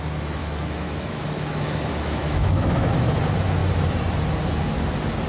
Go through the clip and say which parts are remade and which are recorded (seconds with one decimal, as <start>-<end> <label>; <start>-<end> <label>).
0.0-0.4 recorded; 0.4-3.2 remade; 3.2-5.3 recorded